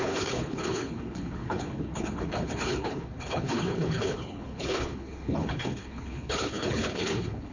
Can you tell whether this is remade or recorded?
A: remade